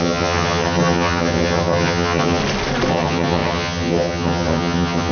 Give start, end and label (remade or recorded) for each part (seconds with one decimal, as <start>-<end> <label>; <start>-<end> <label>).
0.0-2.4 remade; 2.4-2.9 recorded; 2.9-5.1 remade